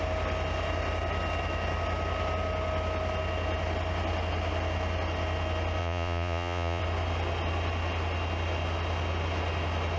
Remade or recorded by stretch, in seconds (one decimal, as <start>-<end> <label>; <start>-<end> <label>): 0.0-5.8 recorded; 5.8-6.8 remade; 6.8-10.0 recorded